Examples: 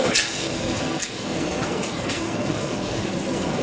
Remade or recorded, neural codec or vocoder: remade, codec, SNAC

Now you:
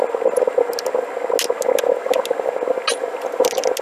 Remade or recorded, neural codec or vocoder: recorded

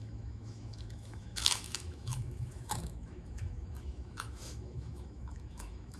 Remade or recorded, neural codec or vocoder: remade, autoencoder, DAC-VAE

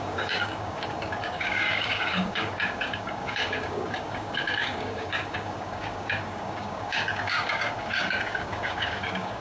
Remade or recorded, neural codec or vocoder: remade, codec, DAC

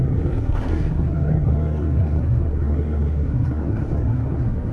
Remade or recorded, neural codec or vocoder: remade, codec, SNAC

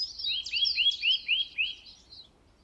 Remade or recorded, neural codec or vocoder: recorded